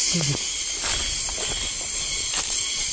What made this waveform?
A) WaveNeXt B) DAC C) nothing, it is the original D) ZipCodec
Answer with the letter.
C